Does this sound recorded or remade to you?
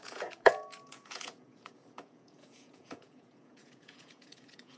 remade